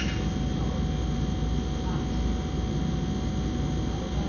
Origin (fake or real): real